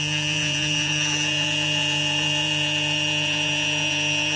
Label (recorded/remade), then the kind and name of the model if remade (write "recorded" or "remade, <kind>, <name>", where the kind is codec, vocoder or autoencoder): remade, vocoder, Vocos